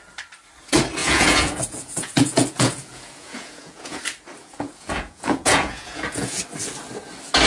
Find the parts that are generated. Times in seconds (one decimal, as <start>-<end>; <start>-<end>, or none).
1.0-4.0; 4.4-6.4